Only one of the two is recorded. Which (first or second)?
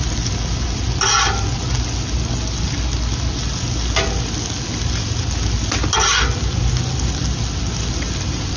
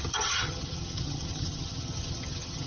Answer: first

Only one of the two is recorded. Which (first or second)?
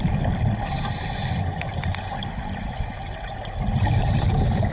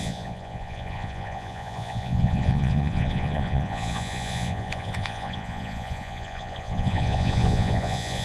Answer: first